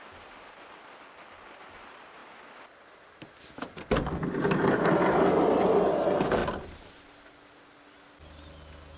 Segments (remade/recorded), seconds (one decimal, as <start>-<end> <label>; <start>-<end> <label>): 0.0-9.0 recorded